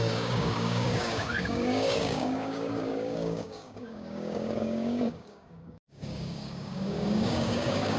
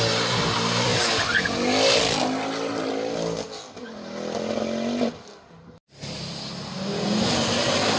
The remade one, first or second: first